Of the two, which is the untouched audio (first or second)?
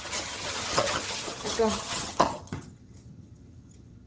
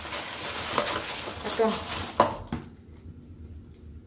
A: second